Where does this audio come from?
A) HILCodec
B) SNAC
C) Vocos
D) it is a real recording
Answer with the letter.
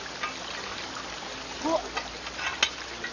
D